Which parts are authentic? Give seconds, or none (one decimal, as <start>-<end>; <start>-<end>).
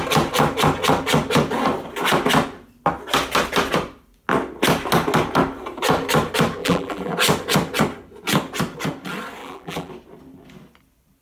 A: 0.0-6.6; 7.1-9.4; 9.9-11.2